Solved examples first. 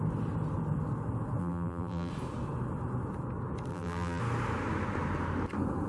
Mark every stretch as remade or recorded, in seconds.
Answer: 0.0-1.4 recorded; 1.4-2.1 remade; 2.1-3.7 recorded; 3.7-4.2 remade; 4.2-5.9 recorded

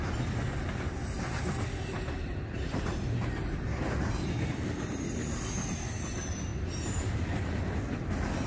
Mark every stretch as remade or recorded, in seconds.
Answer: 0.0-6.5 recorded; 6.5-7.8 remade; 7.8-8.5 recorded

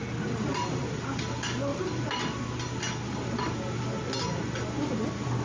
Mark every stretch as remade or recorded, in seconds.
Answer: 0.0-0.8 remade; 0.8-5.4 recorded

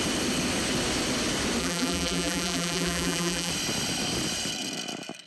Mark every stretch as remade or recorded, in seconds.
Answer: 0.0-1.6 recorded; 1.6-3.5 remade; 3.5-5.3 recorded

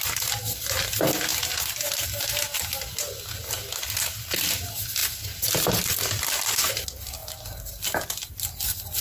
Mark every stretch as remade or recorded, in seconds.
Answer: 0.0-5.0 recorded; 5.0-6.2 remade; 6.2-9.0 recorded

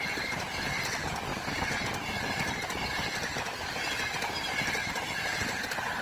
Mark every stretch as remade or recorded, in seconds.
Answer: 0.0-6.0 recorded